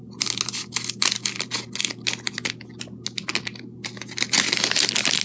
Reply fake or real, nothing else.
real